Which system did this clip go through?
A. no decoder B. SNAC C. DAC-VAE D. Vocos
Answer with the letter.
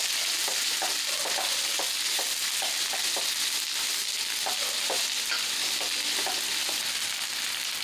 A